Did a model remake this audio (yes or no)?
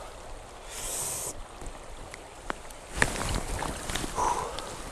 no